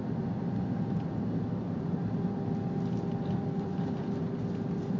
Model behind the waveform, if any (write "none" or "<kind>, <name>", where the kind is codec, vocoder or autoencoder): none